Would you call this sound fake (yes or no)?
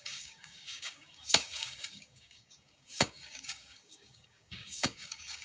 yes